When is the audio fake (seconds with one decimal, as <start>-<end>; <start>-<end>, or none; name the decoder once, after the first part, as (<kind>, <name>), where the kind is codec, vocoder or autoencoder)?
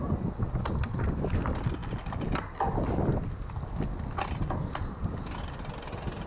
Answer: none